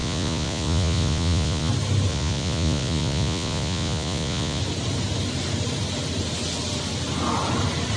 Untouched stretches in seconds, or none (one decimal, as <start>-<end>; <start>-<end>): 1.7-2.1; 4.6-8.0